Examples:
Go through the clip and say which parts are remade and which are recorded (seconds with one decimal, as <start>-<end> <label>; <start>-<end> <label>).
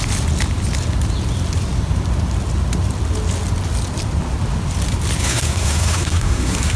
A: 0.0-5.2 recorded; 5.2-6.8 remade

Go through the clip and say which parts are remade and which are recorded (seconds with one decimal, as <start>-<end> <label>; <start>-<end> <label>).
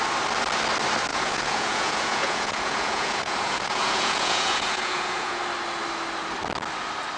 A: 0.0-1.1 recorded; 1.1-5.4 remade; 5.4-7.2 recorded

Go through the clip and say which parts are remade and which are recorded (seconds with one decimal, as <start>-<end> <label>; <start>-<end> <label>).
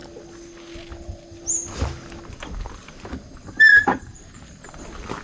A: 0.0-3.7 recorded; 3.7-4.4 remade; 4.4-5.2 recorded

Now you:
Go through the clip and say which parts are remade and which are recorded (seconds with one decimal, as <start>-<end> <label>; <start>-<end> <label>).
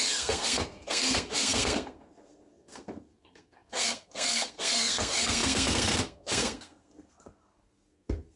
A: 0.0-8.4 remade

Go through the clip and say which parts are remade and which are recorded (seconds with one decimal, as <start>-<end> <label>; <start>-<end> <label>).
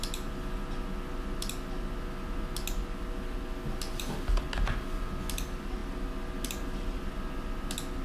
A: 0.0-8.0 recorded